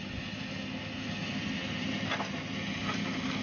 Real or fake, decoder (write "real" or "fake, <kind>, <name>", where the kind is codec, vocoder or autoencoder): real